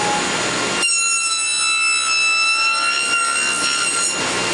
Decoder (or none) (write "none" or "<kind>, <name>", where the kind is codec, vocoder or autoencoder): none